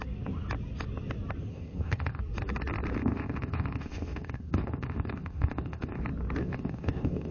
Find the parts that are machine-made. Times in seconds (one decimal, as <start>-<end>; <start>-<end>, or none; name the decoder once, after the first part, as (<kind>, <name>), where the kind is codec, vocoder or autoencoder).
1.5-2.2 (codec, ZipCodec); 3.0-6.0; 6.4-7.3